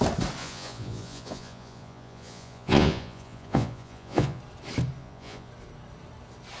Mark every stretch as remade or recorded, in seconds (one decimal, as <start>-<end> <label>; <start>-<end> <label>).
0.0-0.4 recorded; 0.4-4.4 remade; 4.4-5.0 recorded; 5.0-5.5 remade; 5.5-6.6 recorded